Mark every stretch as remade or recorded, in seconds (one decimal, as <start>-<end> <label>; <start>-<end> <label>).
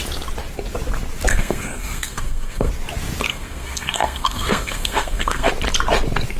0.0-1.3 recorded; 1.3-2.7 remade; 2.7-3.3 recorded; 3.3-5.5 remade; 5.5-6.4 recorded